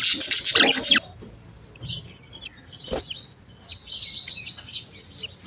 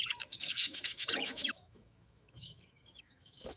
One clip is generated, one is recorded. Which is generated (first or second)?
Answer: second